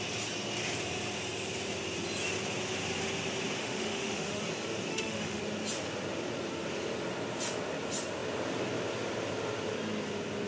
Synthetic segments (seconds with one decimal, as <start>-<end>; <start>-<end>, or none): 3.6-4.4; 4.9-5.4